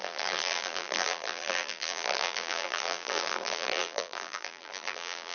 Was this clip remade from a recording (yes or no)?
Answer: yes